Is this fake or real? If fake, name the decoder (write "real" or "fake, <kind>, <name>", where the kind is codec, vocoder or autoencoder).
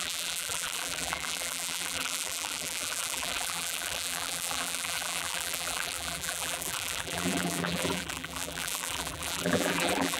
fake, vocoder, BigVGAN v2